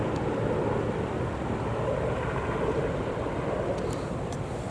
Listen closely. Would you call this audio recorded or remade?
recorded